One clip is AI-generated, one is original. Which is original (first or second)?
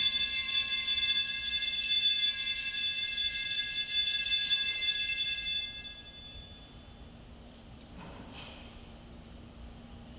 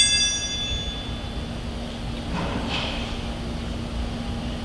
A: second